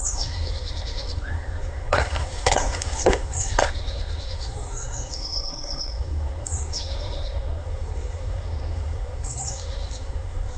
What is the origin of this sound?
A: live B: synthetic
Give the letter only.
B